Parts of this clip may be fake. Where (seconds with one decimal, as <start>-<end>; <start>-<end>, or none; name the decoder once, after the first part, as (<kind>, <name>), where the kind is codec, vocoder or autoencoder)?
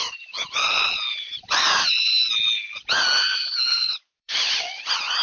0.0-2.0 (vocoder, BigVGAN v2); 3.7-5.2